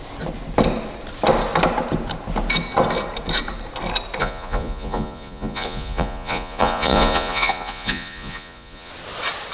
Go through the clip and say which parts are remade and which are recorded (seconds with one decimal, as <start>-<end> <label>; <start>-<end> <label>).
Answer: 0.0-4.2 recorded; 4.2-8.9 remade; 8.9-9.5 recorded